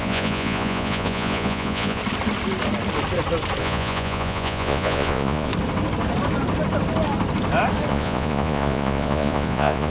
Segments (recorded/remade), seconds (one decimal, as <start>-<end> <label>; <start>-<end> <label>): 0.0-2.0 remade; 2.0-3.6 recorded; 3.6-5.5 remade; 5.5-7.9 recorded; 7.9-9.9 remade